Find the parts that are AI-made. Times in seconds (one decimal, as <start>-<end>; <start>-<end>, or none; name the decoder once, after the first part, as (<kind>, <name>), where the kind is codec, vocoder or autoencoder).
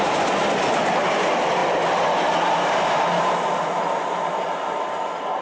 none